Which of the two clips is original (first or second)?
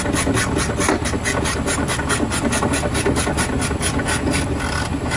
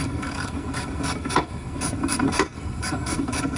first